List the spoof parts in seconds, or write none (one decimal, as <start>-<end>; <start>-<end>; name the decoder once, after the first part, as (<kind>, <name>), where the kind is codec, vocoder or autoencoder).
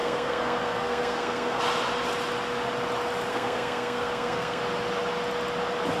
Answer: 0.0-1.6 (codec, SNAC); 3.3-4.6